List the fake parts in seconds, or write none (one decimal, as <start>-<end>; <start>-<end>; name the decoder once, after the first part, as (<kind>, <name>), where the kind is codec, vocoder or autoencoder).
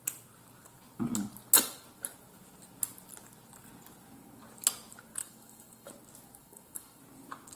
5.2-5.9 (codec, DAC); 6.4-7.0